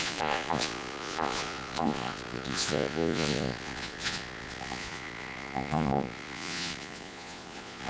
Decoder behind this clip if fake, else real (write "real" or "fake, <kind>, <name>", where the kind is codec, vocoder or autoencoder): fake, vocoder, Vocos